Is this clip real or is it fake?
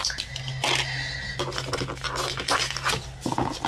real